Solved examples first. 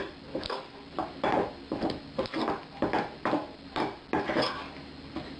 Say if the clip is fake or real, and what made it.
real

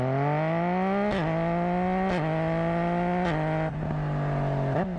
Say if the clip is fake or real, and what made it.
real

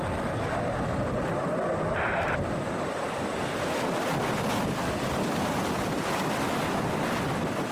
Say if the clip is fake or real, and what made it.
real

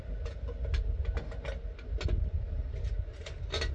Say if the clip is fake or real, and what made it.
real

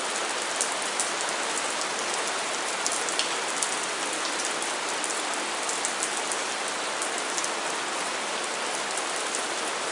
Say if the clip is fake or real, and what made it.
real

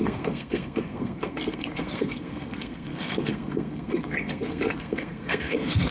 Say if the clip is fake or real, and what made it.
fake, codec, SNAC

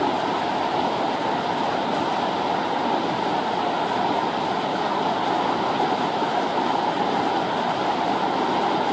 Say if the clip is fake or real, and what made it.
real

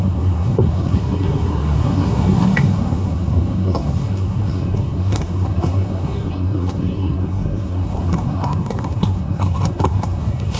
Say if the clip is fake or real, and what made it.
fake, codec, SNAC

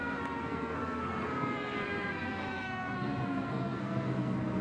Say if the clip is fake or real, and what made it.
fake, codec, SNAC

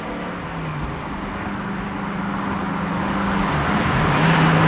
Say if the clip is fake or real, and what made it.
real